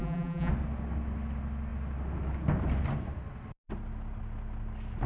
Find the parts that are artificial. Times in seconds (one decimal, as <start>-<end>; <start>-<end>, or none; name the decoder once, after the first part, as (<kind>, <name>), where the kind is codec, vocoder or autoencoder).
0.0-0.5 (vocoder, BigVGAN v2)